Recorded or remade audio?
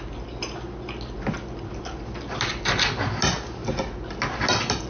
recorded